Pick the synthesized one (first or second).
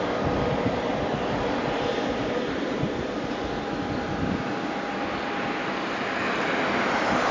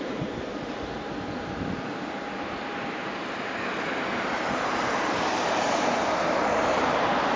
second